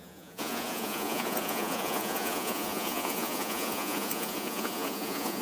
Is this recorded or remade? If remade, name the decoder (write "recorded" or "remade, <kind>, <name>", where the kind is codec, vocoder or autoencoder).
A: remade, vocoder, Vocos